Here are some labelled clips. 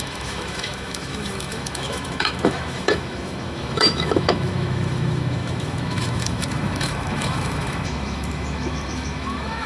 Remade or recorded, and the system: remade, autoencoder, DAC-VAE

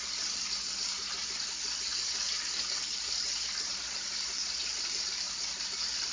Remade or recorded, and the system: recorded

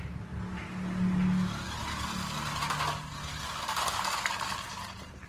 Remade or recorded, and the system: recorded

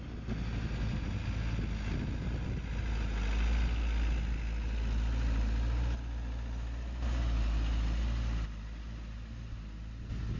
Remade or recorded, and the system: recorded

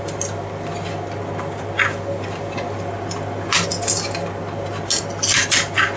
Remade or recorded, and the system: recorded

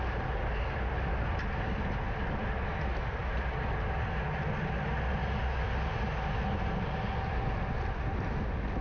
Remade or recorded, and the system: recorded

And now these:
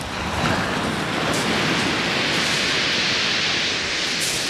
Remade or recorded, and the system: recorded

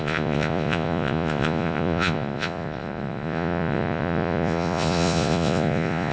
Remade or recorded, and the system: remade, vocoder, Vocos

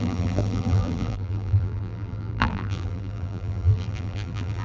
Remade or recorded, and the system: remade, vocoder, BigVGAN v2